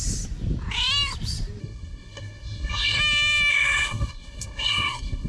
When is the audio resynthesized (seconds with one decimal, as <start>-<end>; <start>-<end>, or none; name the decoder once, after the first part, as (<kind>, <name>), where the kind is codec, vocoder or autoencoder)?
1.6-3.0 (codec, SNAC); 3.5-5.3